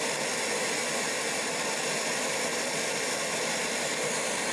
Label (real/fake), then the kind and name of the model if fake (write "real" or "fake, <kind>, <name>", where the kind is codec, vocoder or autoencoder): real